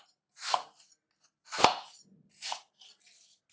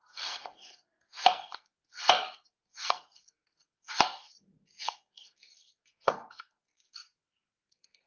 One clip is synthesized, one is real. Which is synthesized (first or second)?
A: second